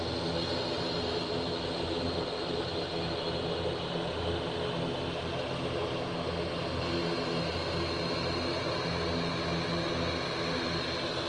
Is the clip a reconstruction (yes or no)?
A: no